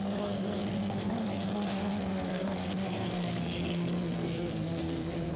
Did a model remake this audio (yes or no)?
yes